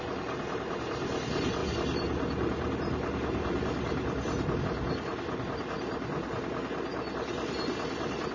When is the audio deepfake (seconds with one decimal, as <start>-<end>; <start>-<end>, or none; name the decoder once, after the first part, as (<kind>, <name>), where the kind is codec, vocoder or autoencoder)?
none